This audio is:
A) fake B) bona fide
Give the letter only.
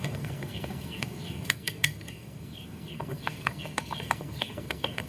A